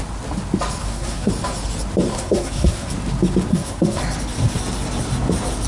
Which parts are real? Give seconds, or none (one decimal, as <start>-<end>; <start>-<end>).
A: 0.0-0.8; 1.3-2.1; 2.9-3.5; 4.0-5.7

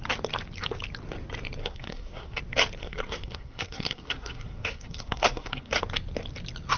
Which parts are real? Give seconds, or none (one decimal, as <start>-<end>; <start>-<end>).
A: 0.0-1.6; 2.4-2.8; 5.8-6.8